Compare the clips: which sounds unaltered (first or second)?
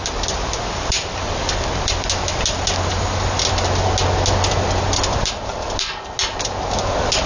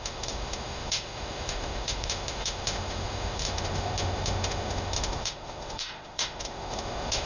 first